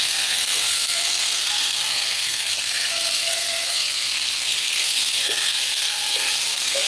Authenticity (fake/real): fake